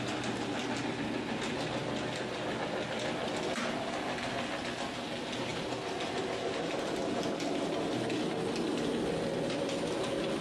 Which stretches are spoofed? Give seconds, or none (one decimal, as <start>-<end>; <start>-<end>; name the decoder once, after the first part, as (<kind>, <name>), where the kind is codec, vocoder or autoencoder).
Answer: none